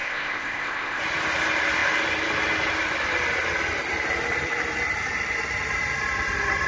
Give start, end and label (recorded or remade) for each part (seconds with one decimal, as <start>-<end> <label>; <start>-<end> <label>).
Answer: 0.0-1.0 remade; 1.0-6.7 recorded